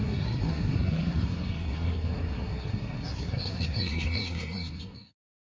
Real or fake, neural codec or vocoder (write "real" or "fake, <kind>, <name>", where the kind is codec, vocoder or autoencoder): fake, codec, SNAC